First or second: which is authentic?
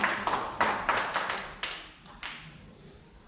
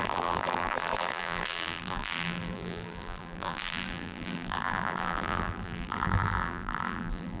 first